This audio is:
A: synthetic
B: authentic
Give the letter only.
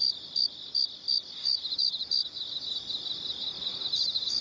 B